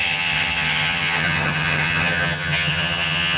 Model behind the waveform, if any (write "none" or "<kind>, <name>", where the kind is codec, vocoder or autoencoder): vocoder, HiFi-GAN